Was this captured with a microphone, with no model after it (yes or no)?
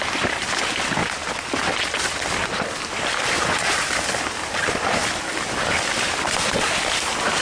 yes